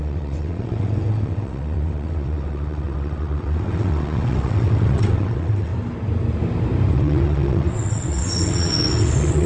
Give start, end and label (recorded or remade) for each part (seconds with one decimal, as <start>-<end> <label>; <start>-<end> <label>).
0.0-5.7 remade; 5.7-6.9 recorded; 6.9-9.5 remade